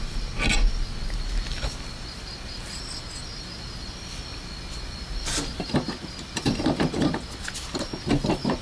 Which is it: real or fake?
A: real